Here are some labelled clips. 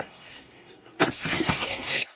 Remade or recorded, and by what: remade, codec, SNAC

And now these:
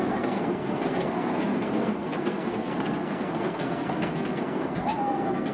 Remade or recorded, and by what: remade, codec, SNAC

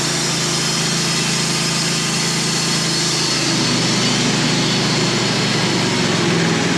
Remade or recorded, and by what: recorded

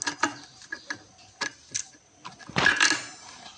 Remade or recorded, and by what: recorded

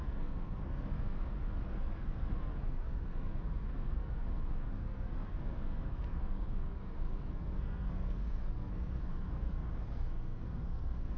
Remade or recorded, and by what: remade, codec, SNAC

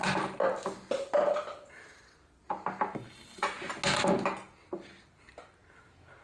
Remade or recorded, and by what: recorded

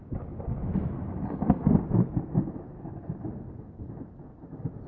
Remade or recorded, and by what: recorded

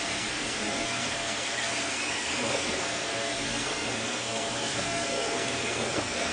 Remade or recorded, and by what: remade, codec, SNAC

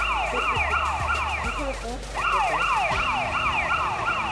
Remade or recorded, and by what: recorded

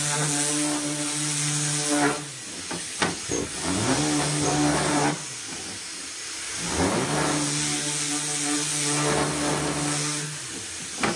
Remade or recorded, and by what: recorded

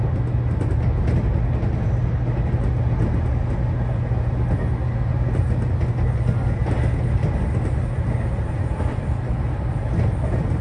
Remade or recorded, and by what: recorded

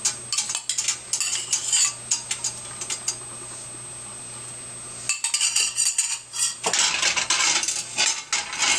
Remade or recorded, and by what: recorded